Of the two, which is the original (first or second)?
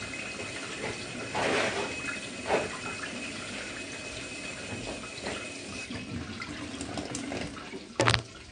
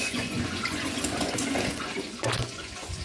first